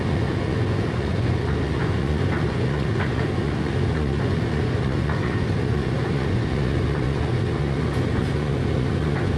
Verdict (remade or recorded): remade